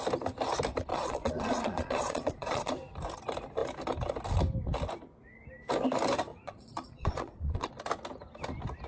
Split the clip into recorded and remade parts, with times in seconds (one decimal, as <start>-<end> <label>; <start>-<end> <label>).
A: 0.0-0.9 recorded; 0.9-2.7 remade; 2.7-6.3 recorded; 6.3-7.7 remade; 7.7-8.9 recorded